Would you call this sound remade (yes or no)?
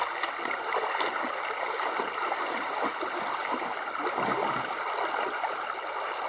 no